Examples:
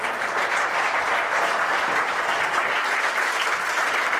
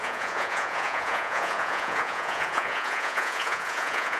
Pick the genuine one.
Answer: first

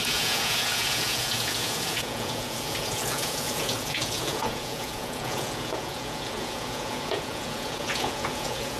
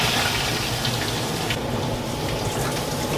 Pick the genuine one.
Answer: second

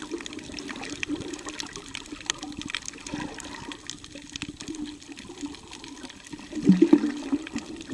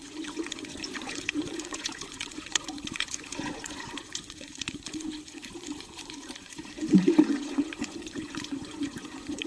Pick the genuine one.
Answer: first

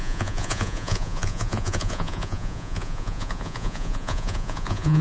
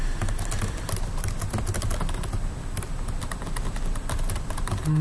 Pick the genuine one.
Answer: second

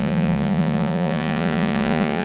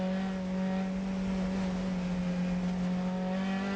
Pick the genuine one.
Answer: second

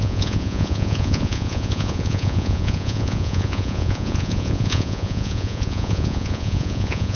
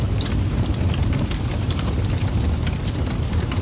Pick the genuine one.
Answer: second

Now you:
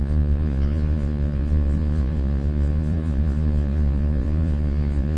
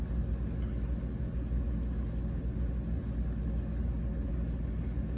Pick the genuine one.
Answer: second